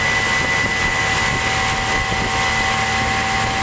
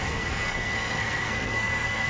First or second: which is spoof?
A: second